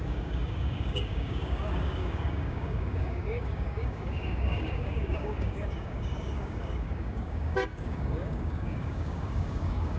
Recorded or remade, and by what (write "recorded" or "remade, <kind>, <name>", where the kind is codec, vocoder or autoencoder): remade, codec, DAC